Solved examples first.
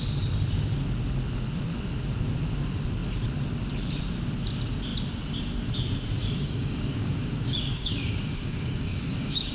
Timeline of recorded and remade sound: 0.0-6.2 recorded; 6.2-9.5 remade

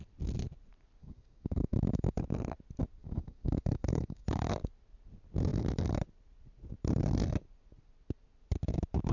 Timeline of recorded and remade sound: 0.0-1.0 recorded; 1.0-2.2 remade; 2.2-3.0 recorded; 3.0-4.5 remade; 4.5-9.1 recorded

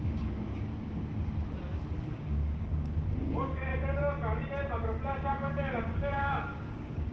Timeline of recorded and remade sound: 0.0-0.7 remade; 0.7-1.9 recorded; 1.9-3.7 remade; 3.7-5.3 recorded; 5.3-7.1 remade

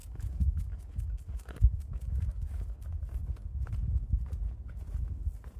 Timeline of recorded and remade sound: 0.0-2.8 remade; 2.8-5.6 recorded

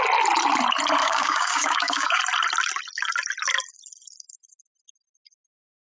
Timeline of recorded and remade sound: 0.0-1.0 recorded; 1.0-2.2 remade; 2.2-5.9 recorded

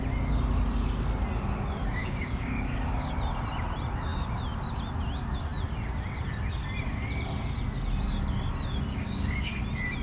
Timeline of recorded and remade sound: 0.0-1.8 recorded; 1.8-3.1 remade; 3.1-8.9 recorded; 8.9-9.6 remade; 9.6-10.0 recorded

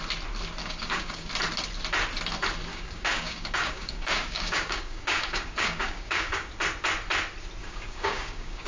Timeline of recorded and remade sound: 0.0-0.6 recorded; 0.6-1.3 remade; 1.3-2.7 recorded; 2.7-6.5 remade; 6.5-7.6 recorded; 7.6-8.7 remade

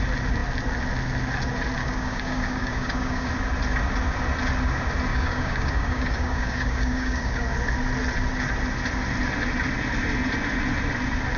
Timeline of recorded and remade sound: 0.0-1.8 recorded; 1.8-3.3 remade; 3.3-5.1 recorded; 5.1-7.4 remade; 7.4-11.4 recorded